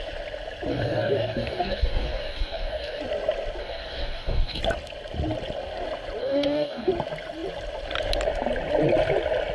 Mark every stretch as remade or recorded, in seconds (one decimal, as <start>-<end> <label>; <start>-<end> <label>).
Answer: 0.0-0.7 recorded; 0.7-3.0 remade; 3.0-3.6 recorded; 3.6-4.6 remade; 4.6-6.2 recorded; 6.2-6.9 remade; 6.9-9.5 recorded